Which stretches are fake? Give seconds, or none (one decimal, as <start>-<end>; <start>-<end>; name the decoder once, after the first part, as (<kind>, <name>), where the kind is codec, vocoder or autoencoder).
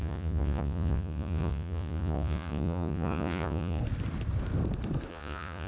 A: 0.0-3.8 (vocoder, Vocos); 5.1-5.7